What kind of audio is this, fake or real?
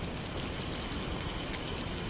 real